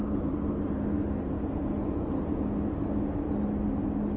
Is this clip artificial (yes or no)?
no